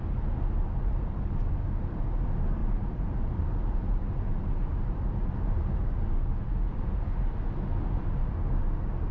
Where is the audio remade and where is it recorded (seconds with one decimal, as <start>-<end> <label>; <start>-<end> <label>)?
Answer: 0.0-2.6 recorded; 2.6-7.0 remade; 7.0-9.1 recorded